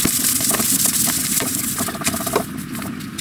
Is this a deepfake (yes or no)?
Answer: no